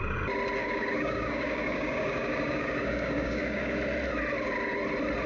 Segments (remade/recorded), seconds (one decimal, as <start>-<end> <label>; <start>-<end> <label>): 0.0-0.6 recorded; 0.6-3.8 remade; 3.8-5.3 recorded